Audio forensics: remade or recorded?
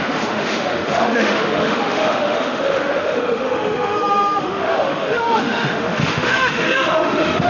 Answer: remade